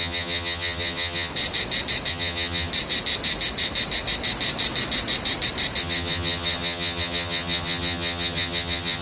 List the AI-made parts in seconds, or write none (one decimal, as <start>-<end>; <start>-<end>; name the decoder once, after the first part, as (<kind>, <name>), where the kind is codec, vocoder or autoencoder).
0.0-1.3 (vocoder, HiFi-GAN); 2.1-2.7; 5.8-9.0